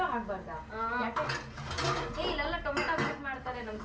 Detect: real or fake real